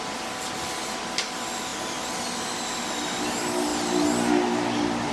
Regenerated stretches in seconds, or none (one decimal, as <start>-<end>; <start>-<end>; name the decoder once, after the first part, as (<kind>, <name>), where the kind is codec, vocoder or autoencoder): none